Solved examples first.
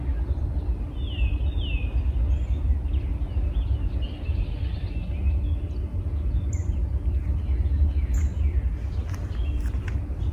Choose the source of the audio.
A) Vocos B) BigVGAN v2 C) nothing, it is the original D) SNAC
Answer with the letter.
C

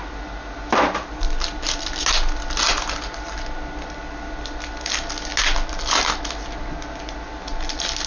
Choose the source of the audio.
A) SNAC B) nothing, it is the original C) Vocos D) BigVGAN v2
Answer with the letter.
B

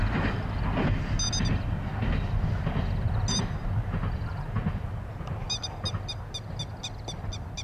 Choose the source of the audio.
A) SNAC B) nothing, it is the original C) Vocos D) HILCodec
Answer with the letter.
B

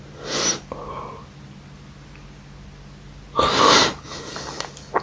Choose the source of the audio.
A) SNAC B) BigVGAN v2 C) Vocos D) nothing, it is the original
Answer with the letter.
D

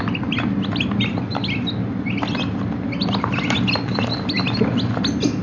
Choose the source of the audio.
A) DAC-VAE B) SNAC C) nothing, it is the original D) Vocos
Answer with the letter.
C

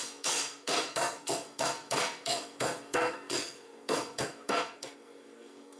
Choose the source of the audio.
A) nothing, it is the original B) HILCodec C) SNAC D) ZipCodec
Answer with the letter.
C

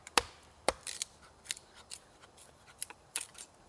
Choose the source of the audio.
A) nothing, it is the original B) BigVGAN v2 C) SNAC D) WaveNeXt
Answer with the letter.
A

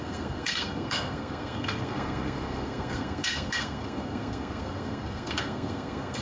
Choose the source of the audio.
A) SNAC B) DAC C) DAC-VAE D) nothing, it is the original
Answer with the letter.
A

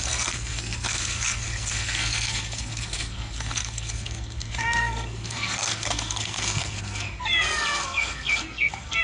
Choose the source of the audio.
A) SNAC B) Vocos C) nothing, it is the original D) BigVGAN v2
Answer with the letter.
A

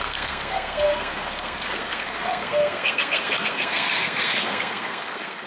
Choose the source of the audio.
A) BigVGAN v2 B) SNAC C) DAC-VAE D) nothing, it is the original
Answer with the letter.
B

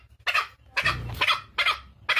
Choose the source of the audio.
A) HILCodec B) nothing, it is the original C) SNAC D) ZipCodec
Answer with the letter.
B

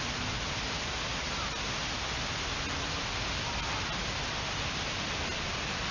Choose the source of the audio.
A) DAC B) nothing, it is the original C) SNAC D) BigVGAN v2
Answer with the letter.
B